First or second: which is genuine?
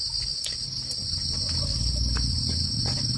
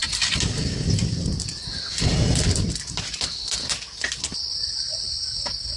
first